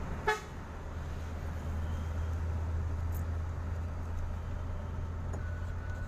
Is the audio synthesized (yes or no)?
no